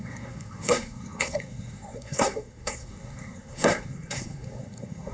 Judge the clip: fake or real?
fake